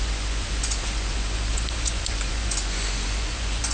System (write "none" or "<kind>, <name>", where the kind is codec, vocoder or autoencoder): vocoder, Vocos